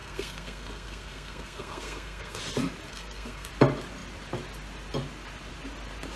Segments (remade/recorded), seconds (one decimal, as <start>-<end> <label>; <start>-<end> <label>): 0.0-2.4 remade; 2.4-2.9 recorded; 2.9-3.5 remade; 3.5-6.2 recorded

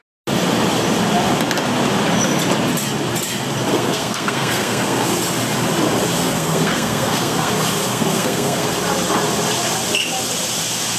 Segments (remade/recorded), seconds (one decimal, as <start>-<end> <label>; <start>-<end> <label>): 0.0-3.7 recorded; 3.7-5.1 remade; 5.1-6.2 recorded; 6.2-7.5 remade; 7.5-7.9 recorded; 7.9-8.7 remade; 8.7-11.0 recorded

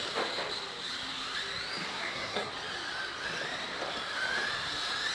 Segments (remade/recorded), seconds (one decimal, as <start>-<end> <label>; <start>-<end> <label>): 0.0-1.9 recorded; 1.9-2.5 remade; 2.5-5.1 recorded

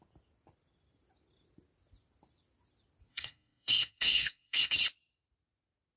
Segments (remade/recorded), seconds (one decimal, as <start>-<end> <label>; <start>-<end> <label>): 0.0-3.1 recorded; 3.1-4.8 remade; 4.8-6.0 recorded

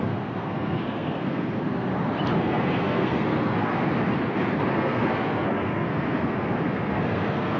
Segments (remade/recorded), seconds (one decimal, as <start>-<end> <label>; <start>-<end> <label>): 0.0-1.9 remade; 1.9-2.4 recorded; 2.4-3.7 remade; 3.7-4.7 recorded; 4.7-7.6 remade

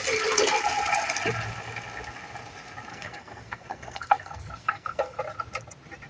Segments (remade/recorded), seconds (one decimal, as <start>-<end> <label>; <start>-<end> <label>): 0.0-2.9 recorded; 2.9-5.2 remade; 5.2-6.1 recorded

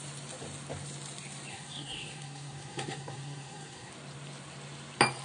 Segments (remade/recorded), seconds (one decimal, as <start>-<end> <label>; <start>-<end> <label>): 0.0-1.5 recorded; 1.5-3.9 remade; 3.9-5.2 recorded

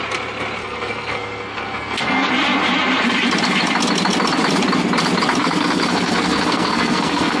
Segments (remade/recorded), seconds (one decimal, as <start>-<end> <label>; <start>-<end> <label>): 0.0-0.6 recorded; 0.6-2.3 remade; 2.3-5.4 recorded; 5.4-7.4 remade